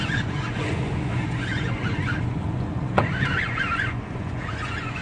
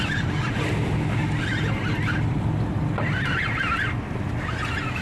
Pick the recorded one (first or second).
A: second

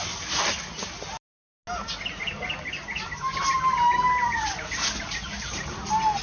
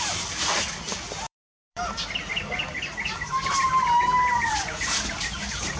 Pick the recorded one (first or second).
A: first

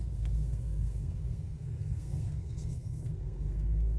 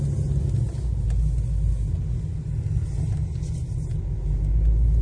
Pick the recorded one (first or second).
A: second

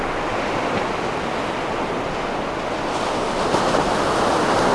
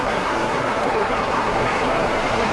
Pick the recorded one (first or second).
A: first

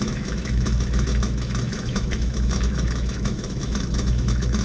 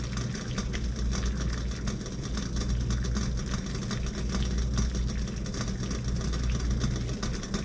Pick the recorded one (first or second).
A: second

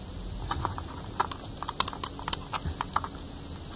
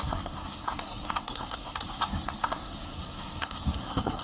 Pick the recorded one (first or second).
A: first